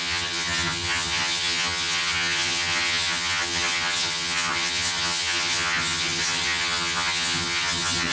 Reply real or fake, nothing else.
fake